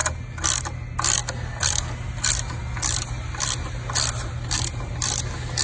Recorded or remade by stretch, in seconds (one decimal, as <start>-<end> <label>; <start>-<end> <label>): 0.0-5.6 recorded